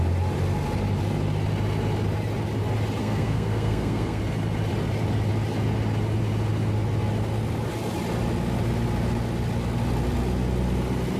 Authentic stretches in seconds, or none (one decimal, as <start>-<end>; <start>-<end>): 0.0-3.0; 4.2-11.2